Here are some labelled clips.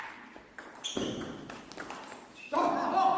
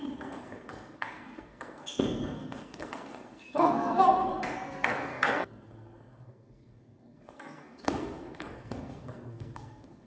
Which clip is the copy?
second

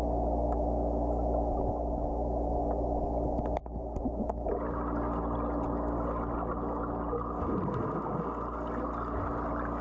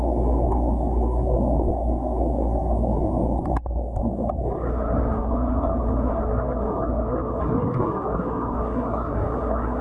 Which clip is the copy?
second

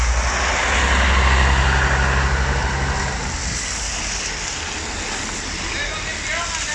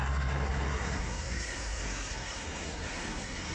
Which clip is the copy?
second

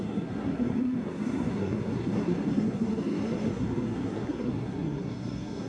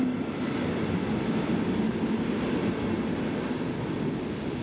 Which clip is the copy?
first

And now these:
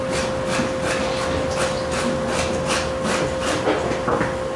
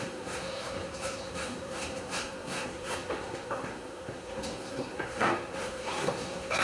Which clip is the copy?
second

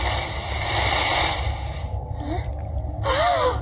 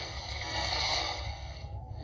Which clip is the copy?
second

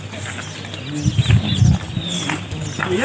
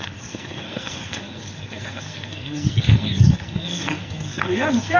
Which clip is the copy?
second